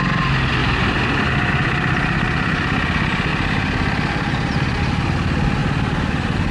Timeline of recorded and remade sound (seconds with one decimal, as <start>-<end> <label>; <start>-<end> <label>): 0.0-0.6 recorded; 0.6-1.5 remade; 1.5-5.6 recorded; 5.6-6.5 remade